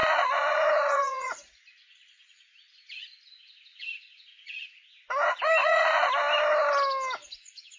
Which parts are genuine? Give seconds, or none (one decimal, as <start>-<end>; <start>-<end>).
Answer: 2.9-3.7; 4.8-5.6; 6.1-7.8